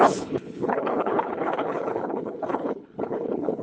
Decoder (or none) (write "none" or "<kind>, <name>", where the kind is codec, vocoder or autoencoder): codec, HILCodec